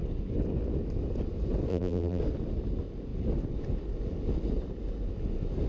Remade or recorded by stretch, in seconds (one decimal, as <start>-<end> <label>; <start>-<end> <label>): 0.0-1.7 recorded; 1.7-2.2 remade; 2.2-5.7 recorded